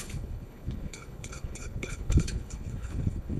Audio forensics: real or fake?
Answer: fake